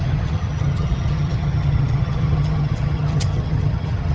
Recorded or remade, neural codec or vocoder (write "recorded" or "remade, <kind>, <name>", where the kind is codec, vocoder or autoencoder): remade, vocoder, HiFi-GAN